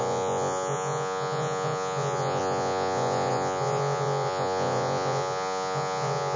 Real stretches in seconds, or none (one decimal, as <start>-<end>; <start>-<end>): none